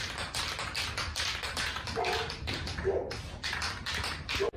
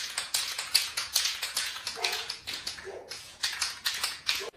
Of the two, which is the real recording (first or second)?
first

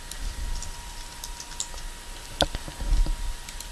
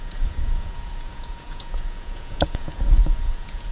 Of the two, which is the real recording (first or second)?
first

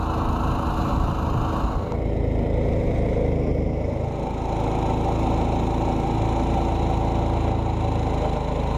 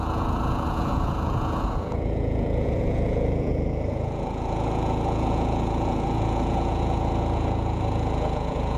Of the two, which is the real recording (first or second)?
first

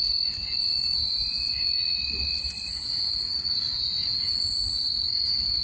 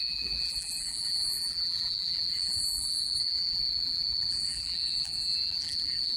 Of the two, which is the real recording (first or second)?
first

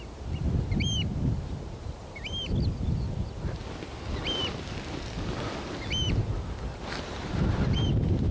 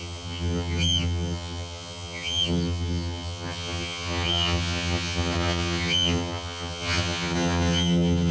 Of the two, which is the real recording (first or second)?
first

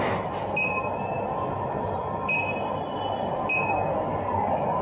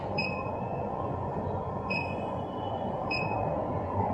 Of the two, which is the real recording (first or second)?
first